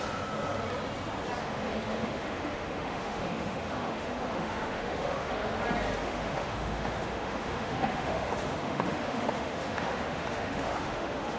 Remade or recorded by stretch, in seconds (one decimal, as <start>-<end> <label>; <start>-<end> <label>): 0.0-1.4 recorded; 1.4-5.6 remade; 5.6-6.0 recorded; 6.0-11.4 remade